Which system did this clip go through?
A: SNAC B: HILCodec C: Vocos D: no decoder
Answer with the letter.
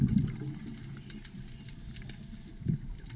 D